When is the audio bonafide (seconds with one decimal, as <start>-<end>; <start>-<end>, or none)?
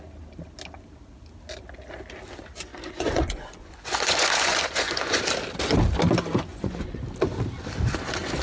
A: 0.0-2.7; 5.2-6.5; 7.0-8.4